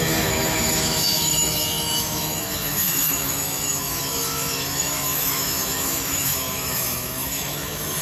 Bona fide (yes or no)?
no